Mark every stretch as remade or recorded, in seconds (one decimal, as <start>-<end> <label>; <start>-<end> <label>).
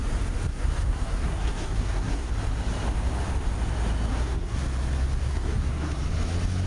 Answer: 0.0-0.5 recorded; 0.5-2.3 remade; 2.3-4.1 recorded; 4.1-4.6 remade; 4.6-5.2 recorded; 5.2-6.0 remade; 6.0-6.7 recorded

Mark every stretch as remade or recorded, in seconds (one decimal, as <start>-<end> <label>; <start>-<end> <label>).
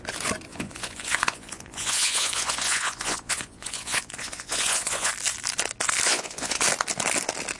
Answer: 0.0-0.5 recorded; 0.5-5.1 remade; 5.1-6.1 recorded; 6.1-6.6 remade; 6.6-7.6 recorded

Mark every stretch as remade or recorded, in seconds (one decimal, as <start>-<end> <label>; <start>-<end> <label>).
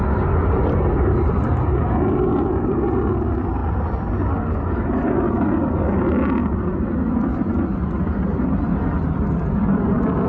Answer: 0.0-0.6 recorded; 0.6-1.5 remade; 1.5-10.3 recorded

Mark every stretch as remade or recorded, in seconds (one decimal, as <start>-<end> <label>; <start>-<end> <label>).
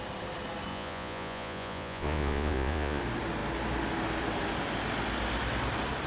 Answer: 0.0-0.7 recorded; 0.7-3.0 remade; 3.0-6.1 recorded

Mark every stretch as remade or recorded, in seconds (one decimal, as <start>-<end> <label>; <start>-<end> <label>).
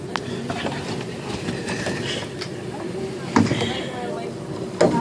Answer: 0.0-5.0 recorded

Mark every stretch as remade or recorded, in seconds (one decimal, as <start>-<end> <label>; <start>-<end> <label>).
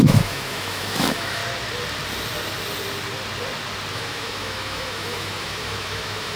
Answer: 0.0-1.4 remade; 1.4-3.9 recorded; 3.9-6.4 remade